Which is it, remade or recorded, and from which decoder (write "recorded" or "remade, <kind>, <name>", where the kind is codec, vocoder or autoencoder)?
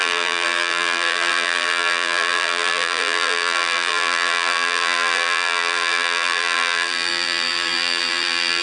remade, vocoder, BigVGAN v2